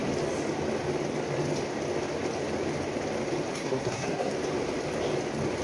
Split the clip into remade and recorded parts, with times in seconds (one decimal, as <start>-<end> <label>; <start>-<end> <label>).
0.0-3.5 recorded; 3.5-4.3 remade; 4.3-5.6 recorded